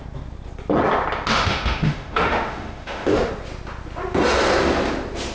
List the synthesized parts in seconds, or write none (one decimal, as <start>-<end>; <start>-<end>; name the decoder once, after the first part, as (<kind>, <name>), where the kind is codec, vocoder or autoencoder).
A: 1.3-3.3 (autoencoder, DAC-VAE)